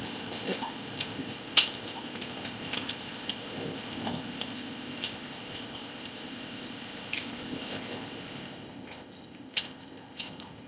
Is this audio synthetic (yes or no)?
yes